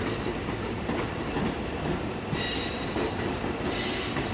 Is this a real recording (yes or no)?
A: yes